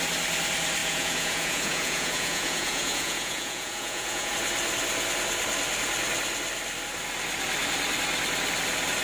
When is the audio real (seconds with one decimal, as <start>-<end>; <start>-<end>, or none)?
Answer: 0.0-0.8; 4.3-9.0